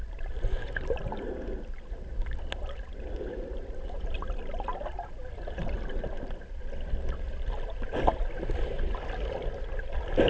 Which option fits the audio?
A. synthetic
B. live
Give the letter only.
B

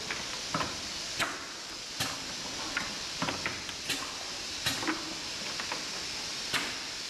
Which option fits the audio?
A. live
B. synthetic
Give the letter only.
A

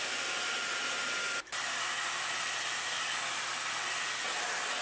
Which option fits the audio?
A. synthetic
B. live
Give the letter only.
B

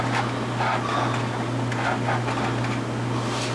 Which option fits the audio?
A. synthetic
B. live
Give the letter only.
B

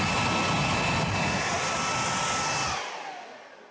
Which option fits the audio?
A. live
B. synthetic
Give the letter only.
A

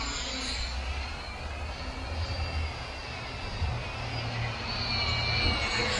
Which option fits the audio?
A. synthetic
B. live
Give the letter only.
B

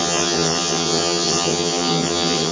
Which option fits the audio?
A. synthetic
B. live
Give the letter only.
A